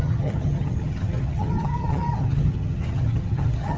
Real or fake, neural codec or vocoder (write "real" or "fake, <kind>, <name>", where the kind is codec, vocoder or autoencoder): fake, vocoder, HiFi-GAN